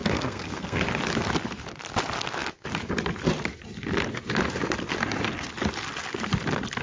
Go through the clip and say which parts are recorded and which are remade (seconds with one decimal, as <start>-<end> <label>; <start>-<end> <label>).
0.0-0.8 remade; 0.8-6.8 recorded

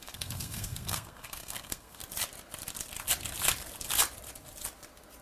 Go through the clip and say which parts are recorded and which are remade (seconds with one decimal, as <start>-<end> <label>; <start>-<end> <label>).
0.0-2.0 remade; 2.0-5.2 recorded